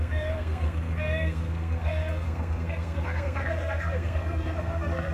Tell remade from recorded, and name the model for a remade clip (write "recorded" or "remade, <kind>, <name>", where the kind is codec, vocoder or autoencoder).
remade, codec, SNAC